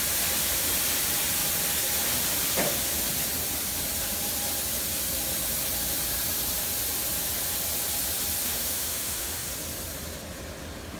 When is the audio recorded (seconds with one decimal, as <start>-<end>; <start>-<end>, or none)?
0.0-8.4; 9.5-11.0